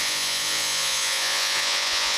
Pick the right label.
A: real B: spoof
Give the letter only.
B